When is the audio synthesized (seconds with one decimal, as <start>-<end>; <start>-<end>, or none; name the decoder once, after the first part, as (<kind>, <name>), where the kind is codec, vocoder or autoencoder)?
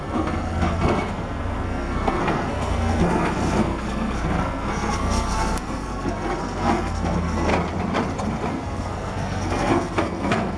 0.0-7.5 (codec, SNAC); 8.5-10.6